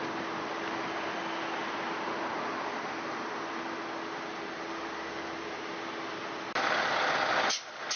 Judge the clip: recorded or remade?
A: recorded